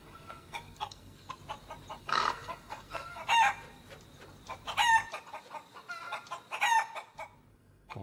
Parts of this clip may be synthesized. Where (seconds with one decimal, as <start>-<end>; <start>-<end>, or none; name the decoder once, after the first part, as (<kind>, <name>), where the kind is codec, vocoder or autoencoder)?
0.0-1.4 (codec, SNAC); 2.0-3.2; 7.5-8.0